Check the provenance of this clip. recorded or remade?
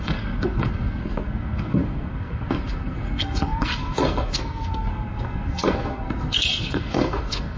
remade